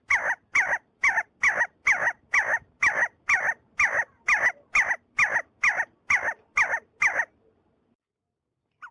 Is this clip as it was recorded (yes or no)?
yes